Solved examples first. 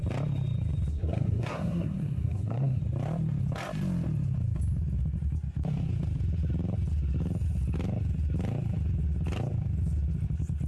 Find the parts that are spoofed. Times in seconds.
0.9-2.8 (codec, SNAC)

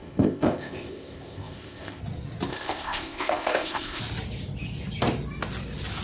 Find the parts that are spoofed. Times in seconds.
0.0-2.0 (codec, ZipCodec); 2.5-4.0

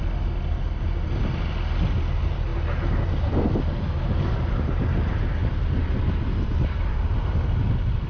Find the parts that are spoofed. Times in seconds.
none